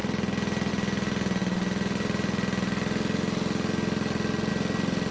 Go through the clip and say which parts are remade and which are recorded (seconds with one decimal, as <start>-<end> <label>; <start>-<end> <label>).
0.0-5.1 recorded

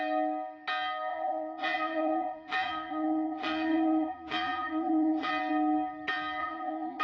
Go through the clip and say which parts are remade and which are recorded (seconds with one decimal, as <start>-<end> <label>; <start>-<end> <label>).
0.0-1.1 recorded; 1.1-5.3 remade; 5.3-6.4 recorded; 6.4-7.0 remade

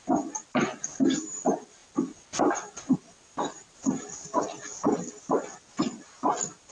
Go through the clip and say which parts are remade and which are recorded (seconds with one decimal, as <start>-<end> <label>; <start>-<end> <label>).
0.0-6.7 recorded

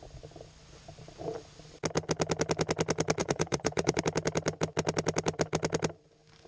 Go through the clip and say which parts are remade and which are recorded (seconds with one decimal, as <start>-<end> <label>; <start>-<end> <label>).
0.0-3.2 recorded; 3.2-4.0 remade; 4.0-6.5 recorded

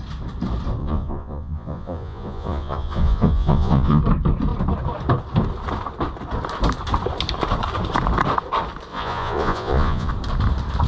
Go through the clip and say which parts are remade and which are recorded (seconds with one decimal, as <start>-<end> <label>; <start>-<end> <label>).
0.0-0.8 recorded; 0.8-4.0 remade; 4.0-8.9 recorded; 8.9-10.1 remade; 10.1-10.9 recorded

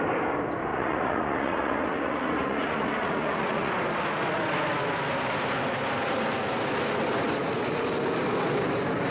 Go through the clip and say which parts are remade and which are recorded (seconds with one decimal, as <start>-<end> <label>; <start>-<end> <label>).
0.0-0.7 recorded; 0.7-3.7 remade; 3.7-9.1 recorded